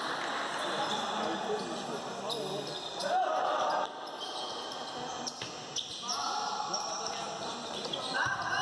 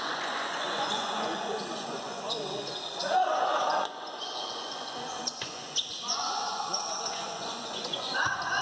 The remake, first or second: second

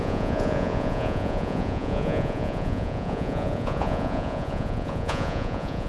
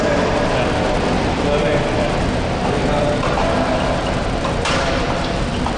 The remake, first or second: first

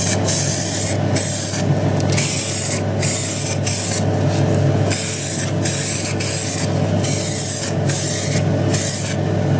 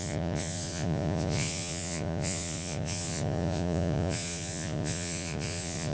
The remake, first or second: second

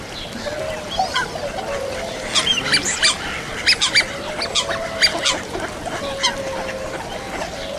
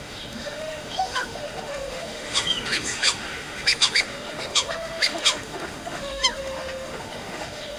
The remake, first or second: second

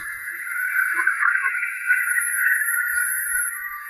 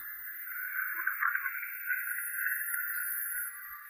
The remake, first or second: first